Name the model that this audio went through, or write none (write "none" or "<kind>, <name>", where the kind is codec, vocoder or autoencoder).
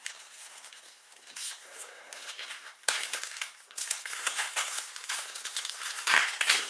codec, SNAC